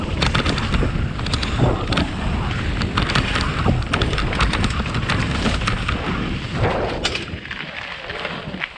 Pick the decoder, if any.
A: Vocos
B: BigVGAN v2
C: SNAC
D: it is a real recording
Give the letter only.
D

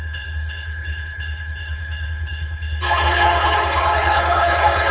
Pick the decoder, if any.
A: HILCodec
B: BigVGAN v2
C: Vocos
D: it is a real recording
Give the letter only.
A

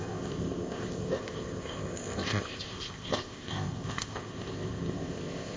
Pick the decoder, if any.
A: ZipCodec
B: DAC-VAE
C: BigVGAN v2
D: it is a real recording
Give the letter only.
A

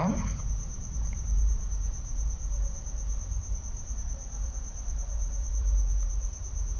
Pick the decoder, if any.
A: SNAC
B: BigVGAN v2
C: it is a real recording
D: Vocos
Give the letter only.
B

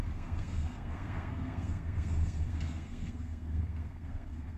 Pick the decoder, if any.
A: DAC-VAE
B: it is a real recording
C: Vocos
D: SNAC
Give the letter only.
D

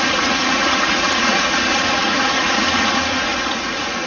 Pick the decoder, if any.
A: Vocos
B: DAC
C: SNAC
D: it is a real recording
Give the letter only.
A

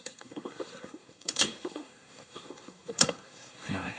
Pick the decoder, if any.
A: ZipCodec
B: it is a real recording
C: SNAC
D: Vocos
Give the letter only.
C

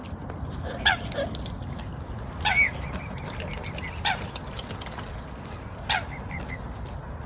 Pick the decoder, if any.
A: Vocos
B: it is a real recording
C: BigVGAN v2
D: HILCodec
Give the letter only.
B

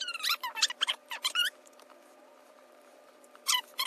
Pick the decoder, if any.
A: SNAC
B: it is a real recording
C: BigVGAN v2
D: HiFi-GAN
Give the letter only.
C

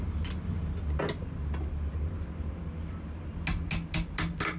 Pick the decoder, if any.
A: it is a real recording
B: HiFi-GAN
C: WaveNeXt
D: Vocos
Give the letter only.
A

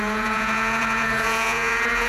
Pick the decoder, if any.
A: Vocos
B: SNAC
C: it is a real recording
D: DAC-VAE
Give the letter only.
A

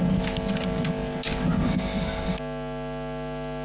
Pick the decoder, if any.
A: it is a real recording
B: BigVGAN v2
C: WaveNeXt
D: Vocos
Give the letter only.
A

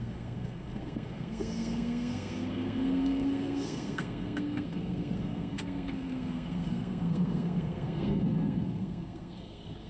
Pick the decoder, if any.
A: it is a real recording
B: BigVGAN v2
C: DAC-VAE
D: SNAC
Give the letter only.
D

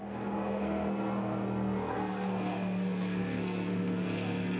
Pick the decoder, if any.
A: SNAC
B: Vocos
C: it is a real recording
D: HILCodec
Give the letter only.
A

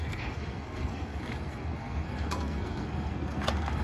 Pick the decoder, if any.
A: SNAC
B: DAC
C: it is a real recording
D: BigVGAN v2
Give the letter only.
A